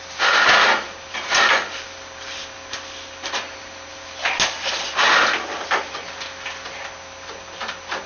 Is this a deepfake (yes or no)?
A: no